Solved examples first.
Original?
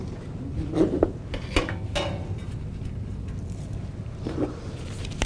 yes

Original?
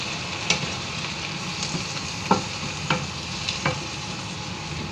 yes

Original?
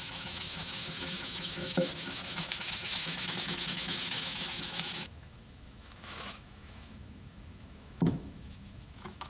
no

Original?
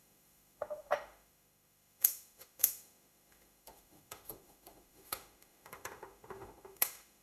no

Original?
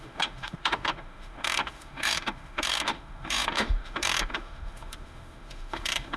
no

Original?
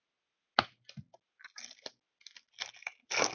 yes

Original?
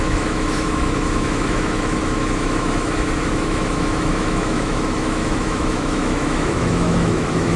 no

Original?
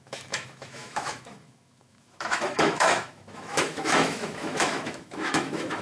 no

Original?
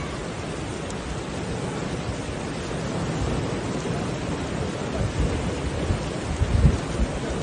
yes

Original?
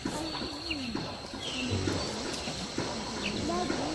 yes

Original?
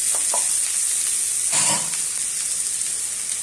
yes